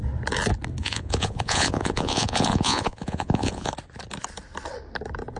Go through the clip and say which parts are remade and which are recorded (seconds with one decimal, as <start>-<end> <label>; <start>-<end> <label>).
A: 0.0-0.8 recorded; 0.8-3.7 remade; 3.7-5.4 recorded